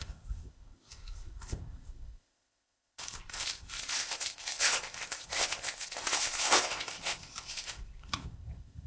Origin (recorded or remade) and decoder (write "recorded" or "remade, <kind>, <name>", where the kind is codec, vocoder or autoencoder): remade, codec, ZipCodec